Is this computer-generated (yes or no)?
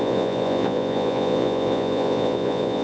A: yes